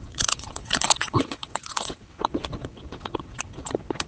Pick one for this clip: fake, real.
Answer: fake